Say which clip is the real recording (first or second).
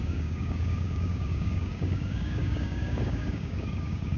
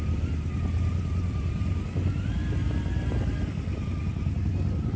second